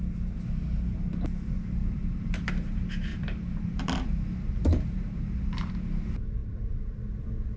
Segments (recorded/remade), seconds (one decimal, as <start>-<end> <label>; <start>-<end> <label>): 0.0-1.8 recorded; 1.8-2.5 remade; 2.5-3.1 recorded; 3.1-5.7 remade; 5.7-6.4 recorded; 6.4-7.0 remade; 7.0-7.6 recorded